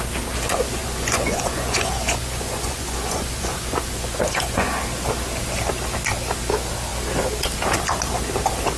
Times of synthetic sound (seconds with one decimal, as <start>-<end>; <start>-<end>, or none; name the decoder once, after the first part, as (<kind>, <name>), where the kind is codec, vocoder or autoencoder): 0.8-4.8 (vocoder, Vocos)